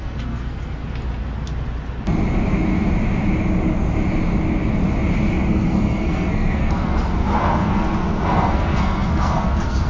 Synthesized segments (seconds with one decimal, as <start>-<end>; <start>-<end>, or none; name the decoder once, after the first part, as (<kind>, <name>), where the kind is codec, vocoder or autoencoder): 0.0-0.8 (codec, SNAC); 5.5-9.9